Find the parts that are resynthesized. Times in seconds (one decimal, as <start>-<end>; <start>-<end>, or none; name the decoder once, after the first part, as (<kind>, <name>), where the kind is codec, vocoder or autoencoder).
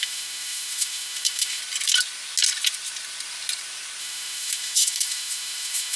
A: 0.0-1.6 (autoencoder, DAC-VAE); 4.0-6.0